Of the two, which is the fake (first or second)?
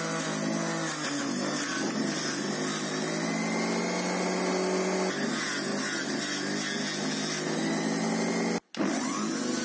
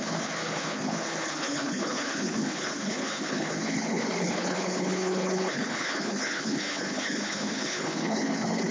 second